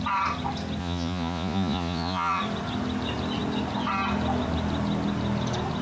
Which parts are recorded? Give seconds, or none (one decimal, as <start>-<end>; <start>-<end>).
0.0-0.8; 2.4-5.8